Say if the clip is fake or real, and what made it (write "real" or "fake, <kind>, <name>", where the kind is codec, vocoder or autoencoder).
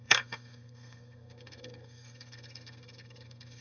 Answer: fake, codec, SNAC